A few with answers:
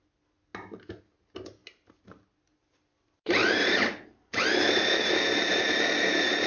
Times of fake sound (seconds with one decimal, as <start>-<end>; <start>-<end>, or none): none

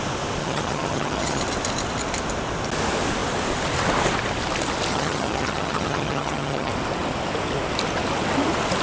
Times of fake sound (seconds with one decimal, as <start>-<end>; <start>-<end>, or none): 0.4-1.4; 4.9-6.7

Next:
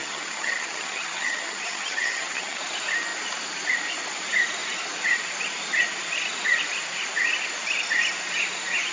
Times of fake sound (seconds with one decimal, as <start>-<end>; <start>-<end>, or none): 0.0-2.6

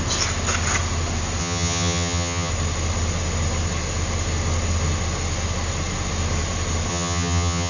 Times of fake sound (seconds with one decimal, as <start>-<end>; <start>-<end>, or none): 1.4-2.5; 6.9-7.7

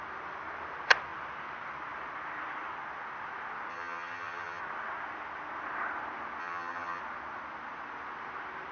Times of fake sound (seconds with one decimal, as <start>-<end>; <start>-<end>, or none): 3.7-4.6; 6.4-7.0

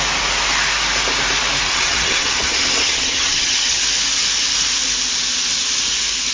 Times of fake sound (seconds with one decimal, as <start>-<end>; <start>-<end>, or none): 1.7-3.8